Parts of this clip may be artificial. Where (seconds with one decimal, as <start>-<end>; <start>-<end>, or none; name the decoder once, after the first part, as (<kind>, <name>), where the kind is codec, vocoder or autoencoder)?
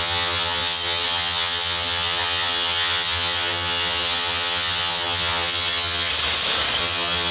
0.0-6.1 (vocoder, HiFi-GAN); 6.8-7.3